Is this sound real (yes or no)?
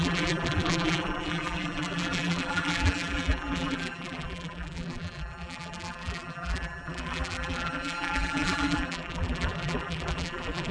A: no